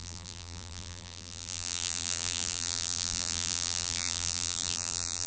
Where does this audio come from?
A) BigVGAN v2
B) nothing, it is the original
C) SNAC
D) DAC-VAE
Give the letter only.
A